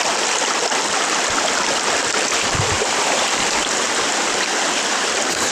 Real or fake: real